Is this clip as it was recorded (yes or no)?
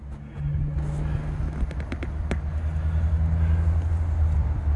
yes